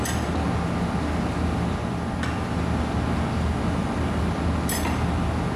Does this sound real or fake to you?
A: real